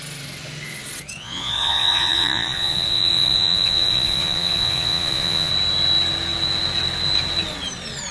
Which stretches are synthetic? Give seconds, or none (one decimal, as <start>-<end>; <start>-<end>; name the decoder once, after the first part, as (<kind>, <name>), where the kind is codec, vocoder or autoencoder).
1.2-5.5 (vocoder, Vocos)